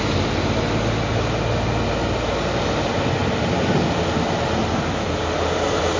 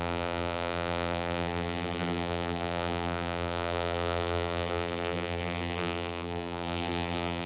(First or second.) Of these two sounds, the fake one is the second